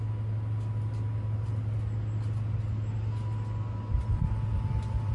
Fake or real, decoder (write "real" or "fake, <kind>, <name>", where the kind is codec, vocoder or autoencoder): real